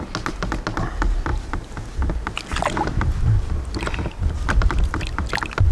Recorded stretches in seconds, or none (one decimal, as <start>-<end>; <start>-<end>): 0.0-5.7